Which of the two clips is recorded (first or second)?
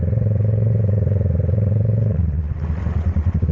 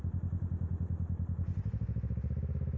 second